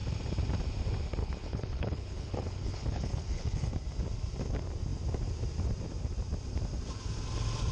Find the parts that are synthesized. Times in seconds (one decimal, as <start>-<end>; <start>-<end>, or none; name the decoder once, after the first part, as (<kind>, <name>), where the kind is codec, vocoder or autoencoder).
1.2-3.7 (codec, HILCodec)